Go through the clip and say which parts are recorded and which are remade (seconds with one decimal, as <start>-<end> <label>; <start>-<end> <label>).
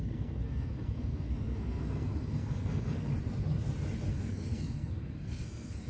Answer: 0.0-3.1 remade; 3.1-4.1 recorded; 4.1-5.9 remade